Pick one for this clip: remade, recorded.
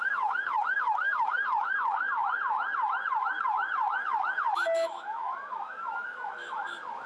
remade